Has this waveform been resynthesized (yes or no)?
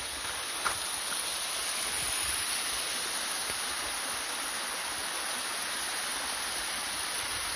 no